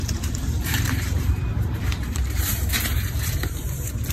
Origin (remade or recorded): remade